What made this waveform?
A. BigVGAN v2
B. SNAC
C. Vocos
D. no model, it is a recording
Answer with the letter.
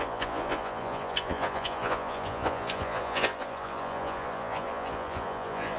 C